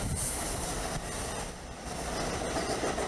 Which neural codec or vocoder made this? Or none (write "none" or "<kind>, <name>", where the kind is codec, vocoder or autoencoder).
none